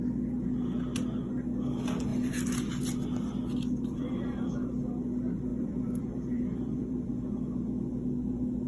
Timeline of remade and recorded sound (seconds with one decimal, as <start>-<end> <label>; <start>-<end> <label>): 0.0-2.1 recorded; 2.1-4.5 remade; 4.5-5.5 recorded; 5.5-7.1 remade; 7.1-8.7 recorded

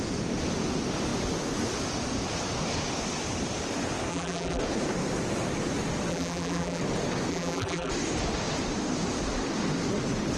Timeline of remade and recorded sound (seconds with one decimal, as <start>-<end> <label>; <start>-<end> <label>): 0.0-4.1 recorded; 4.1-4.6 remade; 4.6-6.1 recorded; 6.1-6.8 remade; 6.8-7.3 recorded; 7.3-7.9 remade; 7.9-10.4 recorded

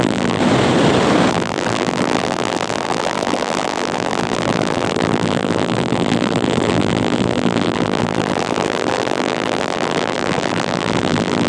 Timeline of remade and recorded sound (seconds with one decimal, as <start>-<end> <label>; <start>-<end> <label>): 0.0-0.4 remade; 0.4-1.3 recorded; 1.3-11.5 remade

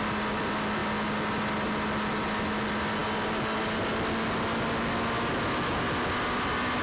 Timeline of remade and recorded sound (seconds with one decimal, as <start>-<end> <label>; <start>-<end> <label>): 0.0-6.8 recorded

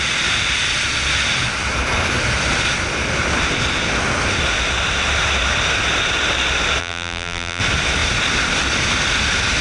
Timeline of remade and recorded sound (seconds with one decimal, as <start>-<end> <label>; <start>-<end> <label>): 0.0-6.8 recorded; 6.8-7.6 remade; 7.6-9.6 recorded